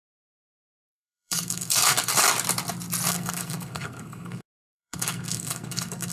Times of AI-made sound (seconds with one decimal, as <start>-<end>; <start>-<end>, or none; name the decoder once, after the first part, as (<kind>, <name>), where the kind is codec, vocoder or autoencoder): 0.0-2.1 (codec, SNAC); 3.1-6.1